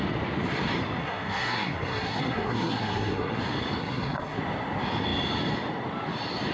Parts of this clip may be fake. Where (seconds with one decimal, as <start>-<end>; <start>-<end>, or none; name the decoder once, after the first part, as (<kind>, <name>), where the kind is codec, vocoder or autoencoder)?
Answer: 1.0-3.4 (codec, SNAC); 3.8-4.4